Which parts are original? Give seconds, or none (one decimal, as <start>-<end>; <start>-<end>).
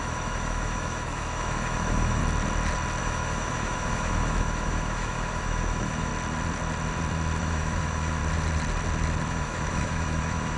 2.2-3.0; 6.1-7.4; 8.2-9.3